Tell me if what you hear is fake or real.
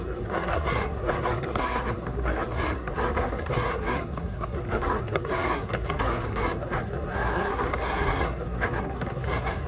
fake